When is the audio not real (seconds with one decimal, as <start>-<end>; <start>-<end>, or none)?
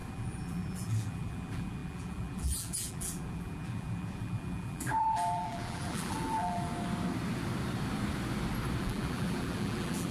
0.0-6.7; 8.8-10.1